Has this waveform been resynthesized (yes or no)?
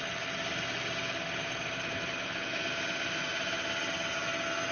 no